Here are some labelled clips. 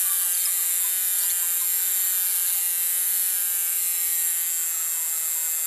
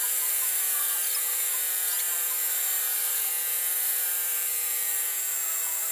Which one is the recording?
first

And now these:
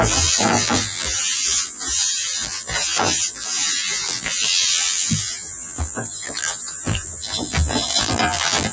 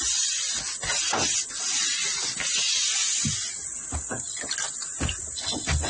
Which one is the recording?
second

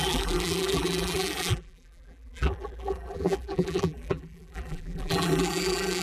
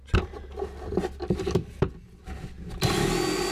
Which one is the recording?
second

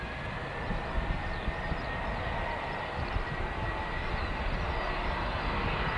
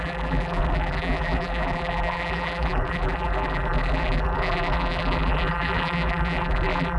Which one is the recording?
first